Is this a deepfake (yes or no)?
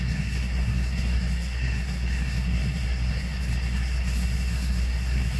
yes